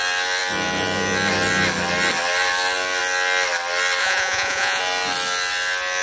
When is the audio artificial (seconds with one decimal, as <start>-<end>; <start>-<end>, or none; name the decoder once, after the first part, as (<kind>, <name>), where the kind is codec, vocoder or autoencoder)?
4.0-4.8 (vocoder, Vocos)